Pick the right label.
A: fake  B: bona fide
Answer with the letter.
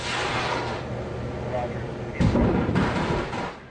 B